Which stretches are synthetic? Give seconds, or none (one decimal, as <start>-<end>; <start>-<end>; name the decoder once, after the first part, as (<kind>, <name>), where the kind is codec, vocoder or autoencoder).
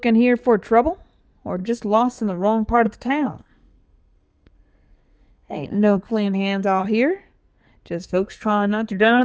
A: 1.6-6.8 (codec, SNAC); 8.0-9.2